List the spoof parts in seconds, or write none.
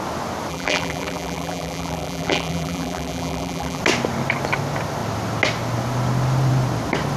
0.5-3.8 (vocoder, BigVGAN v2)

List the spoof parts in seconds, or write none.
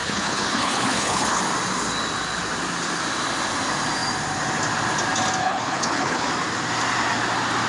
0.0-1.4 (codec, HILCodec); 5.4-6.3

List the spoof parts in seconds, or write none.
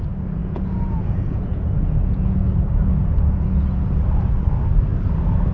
0.4-3.6 (vocoder, Vocos)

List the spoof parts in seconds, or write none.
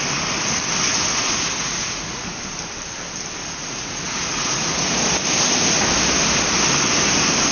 0.9-2.3 (vocoder, Vocos); 3.4-5.0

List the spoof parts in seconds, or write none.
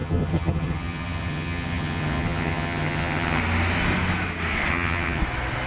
0.0-3.4 (vocoder, HiFi-GAN); 4.7-5.2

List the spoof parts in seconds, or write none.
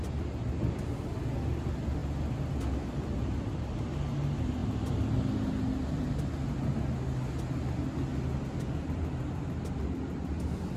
none